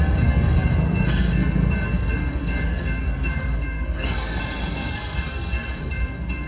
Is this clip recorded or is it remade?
remade